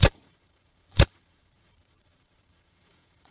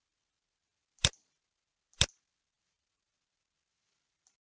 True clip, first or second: second